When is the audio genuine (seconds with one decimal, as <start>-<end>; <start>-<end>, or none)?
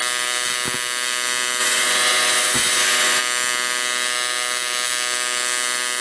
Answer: 0.0-1.6; 3.2-6.0